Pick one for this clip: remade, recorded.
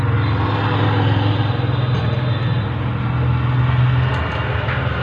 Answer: recorded